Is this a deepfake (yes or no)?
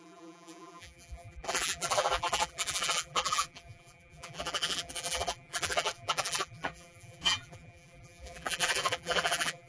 yes